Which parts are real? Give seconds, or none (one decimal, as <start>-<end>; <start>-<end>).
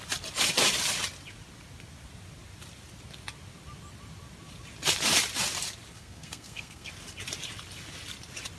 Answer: 0.0-5.9; 6.9-8.6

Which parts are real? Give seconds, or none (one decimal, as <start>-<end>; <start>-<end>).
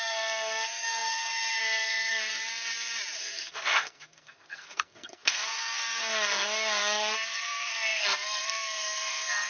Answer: 2.3-3.2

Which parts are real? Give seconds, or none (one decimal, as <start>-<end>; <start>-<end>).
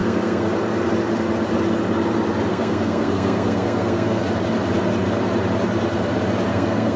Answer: 0.5-2.5; 4.2-6.5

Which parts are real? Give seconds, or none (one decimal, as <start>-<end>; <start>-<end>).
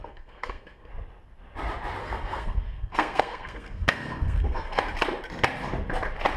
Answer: 0.9-2.0; 4.8-6.4